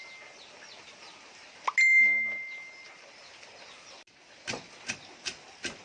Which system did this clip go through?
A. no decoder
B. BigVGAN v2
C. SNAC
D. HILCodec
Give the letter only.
A